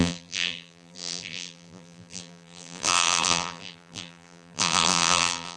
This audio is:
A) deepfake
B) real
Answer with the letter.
A